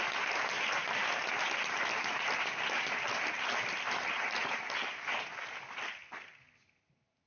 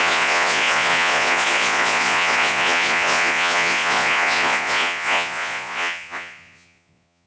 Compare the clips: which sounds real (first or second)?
first